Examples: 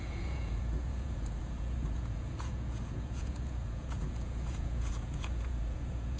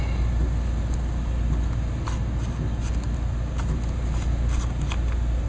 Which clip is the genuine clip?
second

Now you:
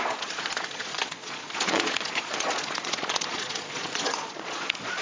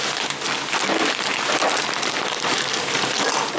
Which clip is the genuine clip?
second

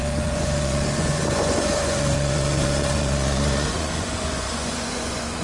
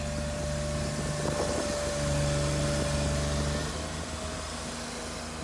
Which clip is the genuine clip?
second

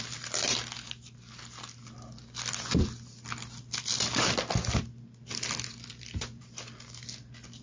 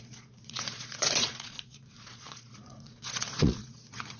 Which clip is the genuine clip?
first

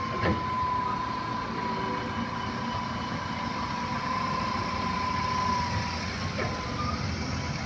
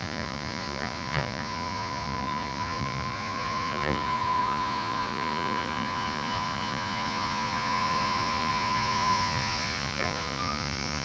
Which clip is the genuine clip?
first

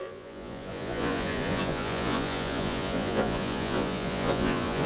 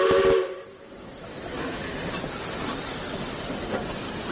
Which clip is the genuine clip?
second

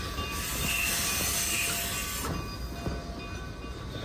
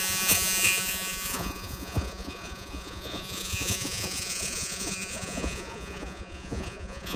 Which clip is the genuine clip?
first